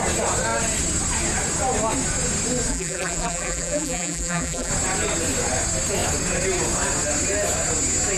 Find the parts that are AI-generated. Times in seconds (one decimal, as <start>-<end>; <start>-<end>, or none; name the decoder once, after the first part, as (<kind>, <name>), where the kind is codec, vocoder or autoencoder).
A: 2.7-4.7 (vocoder, BigVGAN v2)